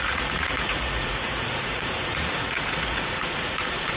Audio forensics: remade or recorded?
remade